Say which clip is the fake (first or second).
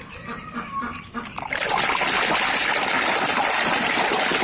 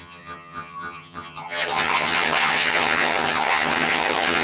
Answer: second